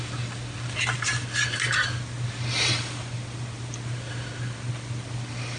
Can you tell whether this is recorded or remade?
recorded